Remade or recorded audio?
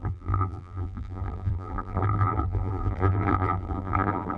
remade